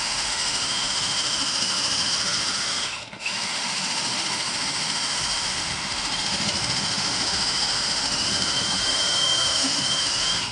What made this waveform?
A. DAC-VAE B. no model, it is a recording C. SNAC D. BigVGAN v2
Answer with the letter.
A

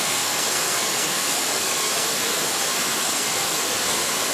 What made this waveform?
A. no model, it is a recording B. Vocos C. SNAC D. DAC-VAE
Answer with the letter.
C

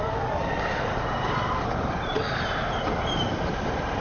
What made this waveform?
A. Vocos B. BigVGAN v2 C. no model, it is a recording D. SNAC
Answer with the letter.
C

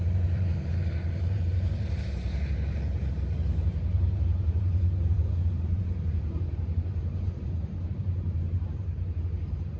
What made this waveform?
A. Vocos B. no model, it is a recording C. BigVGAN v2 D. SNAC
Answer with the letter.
C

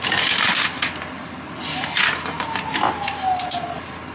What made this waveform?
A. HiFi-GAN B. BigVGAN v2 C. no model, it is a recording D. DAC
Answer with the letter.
C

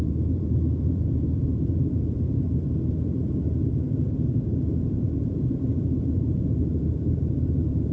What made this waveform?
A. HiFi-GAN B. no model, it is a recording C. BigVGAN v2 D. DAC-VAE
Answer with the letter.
C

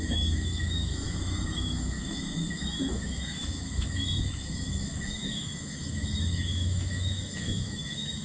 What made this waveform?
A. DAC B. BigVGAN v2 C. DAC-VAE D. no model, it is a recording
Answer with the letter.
C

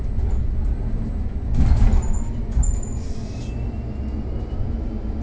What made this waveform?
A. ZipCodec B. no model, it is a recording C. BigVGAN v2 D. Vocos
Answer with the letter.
B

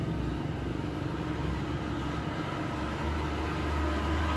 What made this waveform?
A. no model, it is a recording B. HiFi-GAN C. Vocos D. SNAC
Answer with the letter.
A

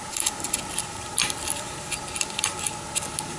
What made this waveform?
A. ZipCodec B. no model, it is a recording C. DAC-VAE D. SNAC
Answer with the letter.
B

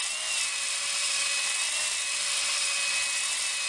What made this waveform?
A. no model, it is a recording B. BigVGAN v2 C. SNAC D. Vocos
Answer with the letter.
A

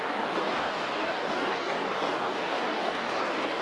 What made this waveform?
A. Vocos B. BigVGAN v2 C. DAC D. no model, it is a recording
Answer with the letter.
C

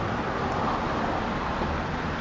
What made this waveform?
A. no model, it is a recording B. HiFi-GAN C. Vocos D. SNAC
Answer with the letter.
A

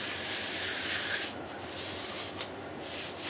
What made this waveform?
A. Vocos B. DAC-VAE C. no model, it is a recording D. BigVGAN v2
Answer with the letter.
C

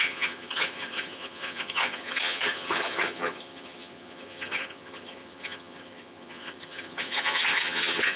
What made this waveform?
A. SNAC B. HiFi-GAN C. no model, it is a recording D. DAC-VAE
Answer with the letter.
B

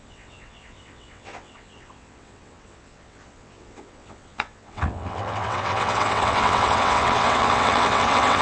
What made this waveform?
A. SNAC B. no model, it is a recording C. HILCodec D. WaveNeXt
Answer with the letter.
D